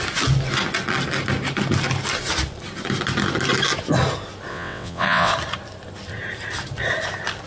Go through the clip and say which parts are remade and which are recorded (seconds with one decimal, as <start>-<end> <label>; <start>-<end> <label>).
0.0-4.5 recorded; 4.5-5.3 remade; 5.3-7.5 recorded